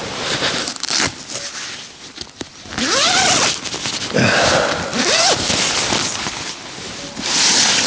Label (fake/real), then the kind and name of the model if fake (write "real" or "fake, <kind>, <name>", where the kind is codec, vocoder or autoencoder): real